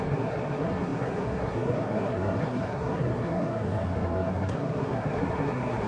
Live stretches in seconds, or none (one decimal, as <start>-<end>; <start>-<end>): none